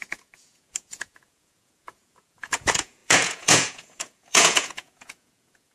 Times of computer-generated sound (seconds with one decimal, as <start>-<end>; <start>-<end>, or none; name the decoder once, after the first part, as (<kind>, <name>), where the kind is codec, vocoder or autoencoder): 0.0-5.7 (vocoder, Vocos)